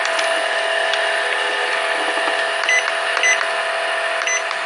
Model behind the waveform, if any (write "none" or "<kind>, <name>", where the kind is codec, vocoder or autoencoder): none